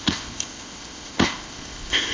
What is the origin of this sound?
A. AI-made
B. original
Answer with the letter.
A